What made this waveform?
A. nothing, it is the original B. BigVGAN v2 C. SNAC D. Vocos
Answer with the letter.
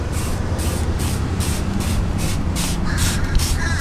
B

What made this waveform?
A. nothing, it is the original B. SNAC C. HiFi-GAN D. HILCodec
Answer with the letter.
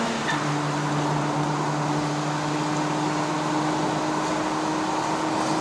A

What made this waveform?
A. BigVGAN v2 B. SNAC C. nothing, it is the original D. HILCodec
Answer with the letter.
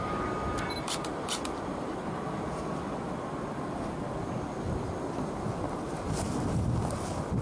C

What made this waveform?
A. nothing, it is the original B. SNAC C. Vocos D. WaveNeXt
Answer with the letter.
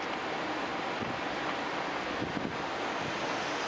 A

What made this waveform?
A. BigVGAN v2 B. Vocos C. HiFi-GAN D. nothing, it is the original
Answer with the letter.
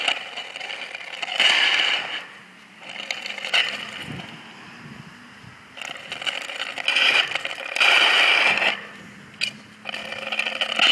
D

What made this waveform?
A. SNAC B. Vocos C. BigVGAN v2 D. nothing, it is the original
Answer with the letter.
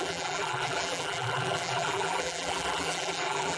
C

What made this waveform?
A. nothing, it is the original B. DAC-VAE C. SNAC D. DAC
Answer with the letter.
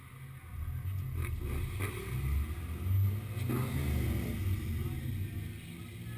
A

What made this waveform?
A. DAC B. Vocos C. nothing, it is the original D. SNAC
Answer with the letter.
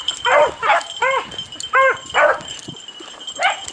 C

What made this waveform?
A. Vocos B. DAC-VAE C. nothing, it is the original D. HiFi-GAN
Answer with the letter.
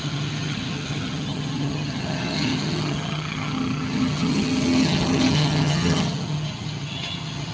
D